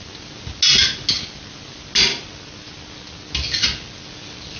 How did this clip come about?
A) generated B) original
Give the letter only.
B